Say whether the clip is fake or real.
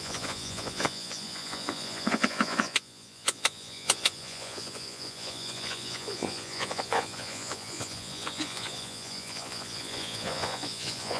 fake